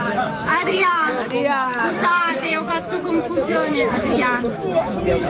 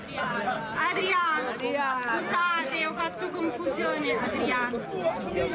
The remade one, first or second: first